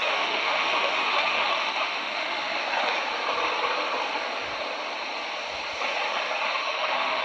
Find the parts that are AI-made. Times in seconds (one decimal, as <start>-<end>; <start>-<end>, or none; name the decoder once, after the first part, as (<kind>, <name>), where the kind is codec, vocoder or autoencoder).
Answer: 0.0-2.6 (autoencoder, DAC-VAE); 6.6-7.2